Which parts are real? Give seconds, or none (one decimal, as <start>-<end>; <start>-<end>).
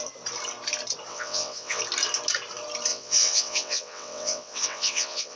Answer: 0.0-1.1; 1.8-2.9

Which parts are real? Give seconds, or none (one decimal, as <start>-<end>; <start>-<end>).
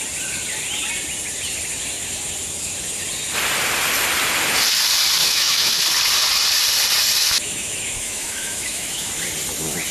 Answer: 0.0-5.2; 5.8-7.2; 9.1-9.9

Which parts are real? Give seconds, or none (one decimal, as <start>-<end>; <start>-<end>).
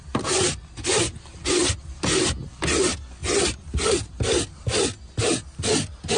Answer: 0.0-6.2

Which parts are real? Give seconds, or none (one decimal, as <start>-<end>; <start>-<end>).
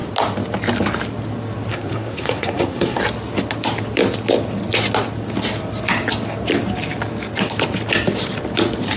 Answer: 0.0-1.7; 3.0-9.0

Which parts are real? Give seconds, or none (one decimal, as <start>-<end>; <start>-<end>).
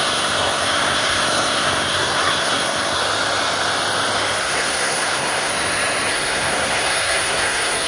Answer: 3.0-4.4; 5.5-6.1